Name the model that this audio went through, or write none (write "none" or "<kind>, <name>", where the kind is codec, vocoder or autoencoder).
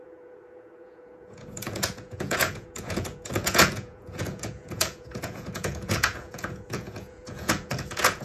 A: vocoder, Vocos